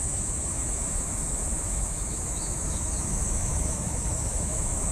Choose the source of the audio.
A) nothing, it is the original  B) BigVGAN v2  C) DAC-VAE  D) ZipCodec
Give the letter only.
C